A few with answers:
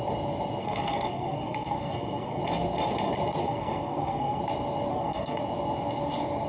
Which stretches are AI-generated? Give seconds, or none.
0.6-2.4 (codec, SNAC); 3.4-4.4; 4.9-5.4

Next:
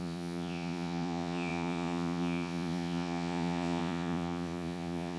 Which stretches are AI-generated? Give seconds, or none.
0.0-5.2 (vocoder, Vocos)

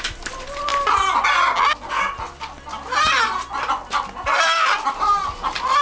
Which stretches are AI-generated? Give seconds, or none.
none

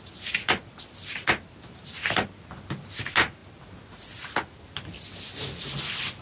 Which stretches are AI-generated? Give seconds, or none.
none

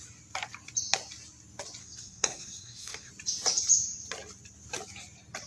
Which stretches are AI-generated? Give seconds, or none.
1.8-3.1 (codec, SNAC)

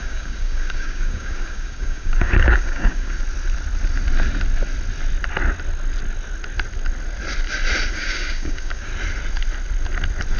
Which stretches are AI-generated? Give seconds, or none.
0.0-3.2 (codec, DAC); 7.9-8.9

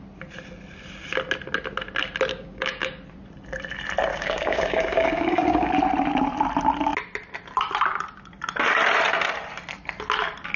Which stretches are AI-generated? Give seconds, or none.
2.3-2.9 (codec, DAC); 4.1-5.7